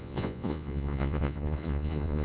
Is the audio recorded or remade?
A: remade